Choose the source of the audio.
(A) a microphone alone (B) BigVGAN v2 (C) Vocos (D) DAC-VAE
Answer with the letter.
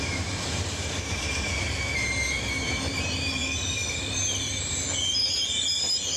B